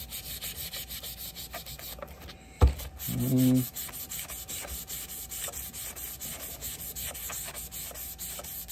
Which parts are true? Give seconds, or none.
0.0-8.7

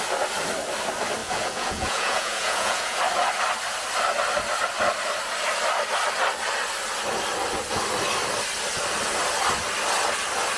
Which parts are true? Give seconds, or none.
0.0-1.2; 3.0-10.6

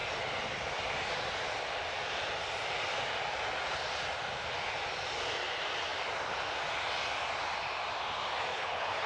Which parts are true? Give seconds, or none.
0.0-8.5

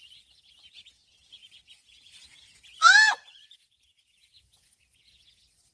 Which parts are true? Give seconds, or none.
0.0-5.7

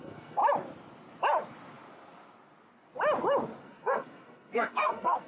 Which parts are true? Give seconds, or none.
0.4-3.6